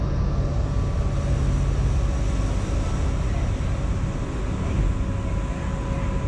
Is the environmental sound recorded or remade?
recorded